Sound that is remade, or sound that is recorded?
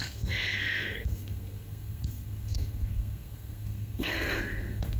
remade